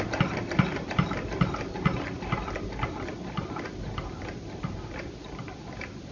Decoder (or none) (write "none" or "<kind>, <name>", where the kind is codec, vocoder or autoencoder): none